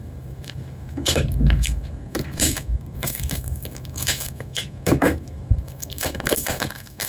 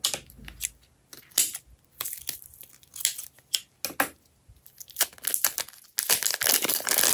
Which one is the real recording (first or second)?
second